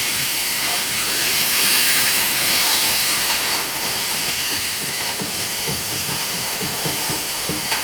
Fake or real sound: fake